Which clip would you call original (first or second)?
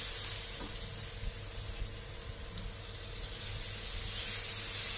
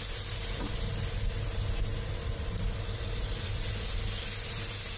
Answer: first